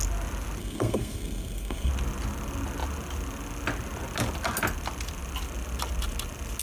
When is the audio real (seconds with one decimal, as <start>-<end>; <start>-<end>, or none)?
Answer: 0.0-0.6; 1.9-6.6